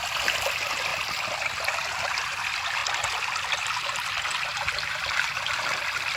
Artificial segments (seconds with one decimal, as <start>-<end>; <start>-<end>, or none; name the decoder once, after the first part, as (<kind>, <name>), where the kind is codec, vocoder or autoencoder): none